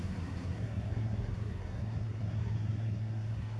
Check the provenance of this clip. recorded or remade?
remade